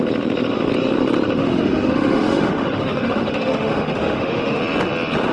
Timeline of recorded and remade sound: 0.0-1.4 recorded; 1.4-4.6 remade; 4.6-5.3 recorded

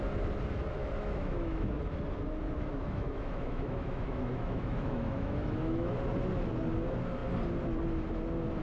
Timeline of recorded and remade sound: 0.0-0.8 recorded; 0.8-1.7 remade; 1.7-2.7 recorded; 2.7-5.9 remade; 5.9-8.6 recorded

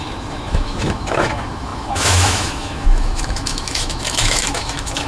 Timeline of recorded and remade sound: 0.0-5.1 remade

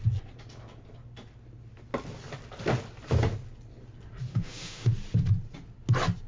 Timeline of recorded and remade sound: 0.0-4.3 recorded; 4.3-4.9 remade; 4.9-6.3 recorded

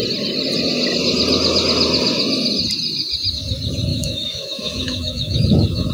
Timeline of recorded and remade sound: 0.0-3.9 recorded; 3.9-5.9 remade

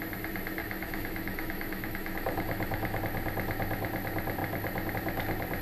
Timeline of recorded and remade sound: 0.0-0.6 recorded; 0.6-3.0 remade; 3.0-5.6 recorded